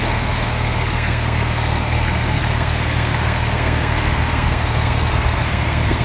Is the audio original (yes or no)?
no